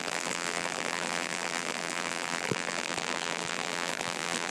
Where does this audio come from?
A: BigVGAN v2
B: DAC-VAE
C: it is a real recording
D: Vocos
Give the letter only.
A